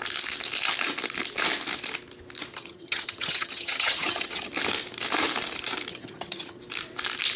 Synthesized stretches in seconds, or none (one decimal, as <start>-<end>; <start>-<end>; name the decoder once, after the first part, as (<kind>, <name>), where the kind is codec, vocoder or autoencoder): 2.5-4.5 (vocoder, HiFi-GAN); 5.9-6.6